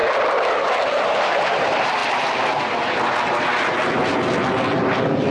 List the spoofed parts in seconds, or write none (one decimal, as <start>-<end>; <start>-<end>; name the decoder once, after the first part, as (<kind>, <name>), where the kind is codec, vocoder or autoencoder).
1.0-2.0 (vocoder, BigVGAN v2)